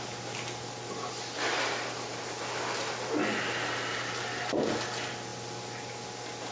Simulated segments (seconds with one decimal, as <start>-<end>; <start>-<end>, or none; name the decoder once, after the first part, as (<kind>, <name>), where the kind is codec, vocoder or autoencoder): none